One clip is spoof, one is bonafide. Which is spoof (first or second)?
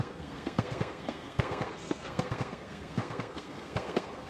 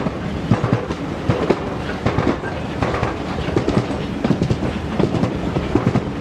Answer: first